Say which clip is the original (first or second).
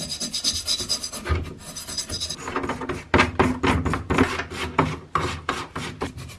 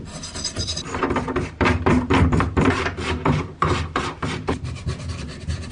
first